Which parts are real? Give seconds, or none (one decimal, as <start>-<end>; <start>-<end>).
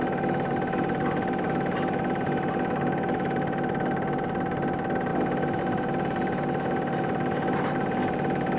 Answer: 0.0-8.6